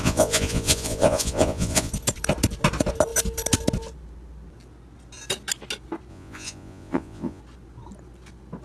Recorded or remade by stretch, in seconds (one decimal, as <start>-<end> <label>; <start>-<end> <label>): 0.0-1.9 remade; 1.9-6.1 recorded; 6.1-7.4 remade; 7.4-8.6 recorded